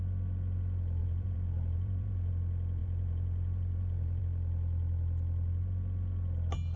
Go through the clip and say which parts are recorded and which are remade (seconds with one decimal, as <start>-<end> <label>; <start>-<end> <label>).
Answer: 0.0-1.0 recorded; 1.0-2.3 remade; 2.3-2.8 recorded; 2.8-4.2 remade; 4.2-6.8 recorded